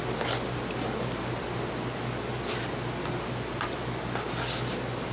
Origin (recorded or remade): recorded